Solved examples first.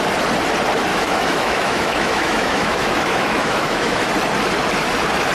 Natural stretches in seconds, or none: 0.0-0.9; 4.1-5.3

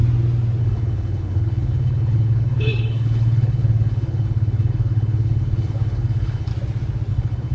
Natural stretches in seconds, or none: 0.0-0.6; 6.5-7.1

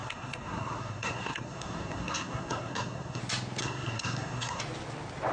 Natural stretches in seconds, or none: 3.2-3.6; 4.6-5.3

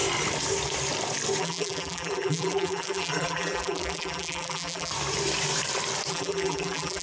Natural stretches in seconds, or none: 0.0-1.4; 4.9-6.1